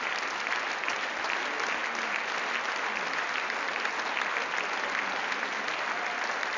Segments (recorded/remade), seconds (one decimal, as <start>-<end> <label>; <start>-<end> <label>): 0.0-6.6 recorded